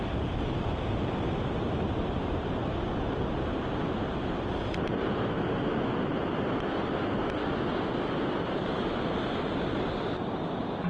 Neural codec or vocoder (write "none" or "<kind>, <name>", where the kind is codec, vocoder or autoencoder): none